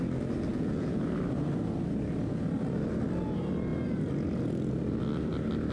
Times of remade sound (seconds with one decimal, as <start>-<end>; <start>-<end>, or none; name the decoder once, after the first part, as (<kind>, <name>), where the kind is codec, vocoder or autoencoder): 0.5-1.0 (vocoder, Vocos)